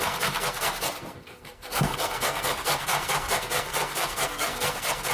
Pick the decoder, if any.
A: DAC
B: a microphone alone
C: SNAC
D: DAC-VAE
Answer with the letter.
C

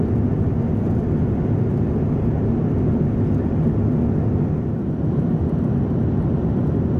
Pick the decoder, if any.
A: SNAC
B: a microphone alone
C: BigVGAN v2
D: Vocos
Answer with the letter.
B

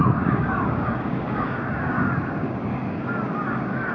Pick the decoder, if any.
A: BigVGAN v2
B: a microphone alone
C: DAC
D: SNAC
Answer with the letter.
C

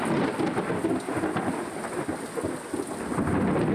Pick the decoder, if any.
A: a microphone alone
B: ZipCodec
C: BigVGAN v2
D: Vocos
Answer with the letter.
A